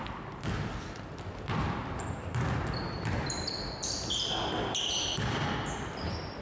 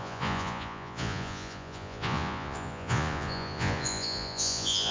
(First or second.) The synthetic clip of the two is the second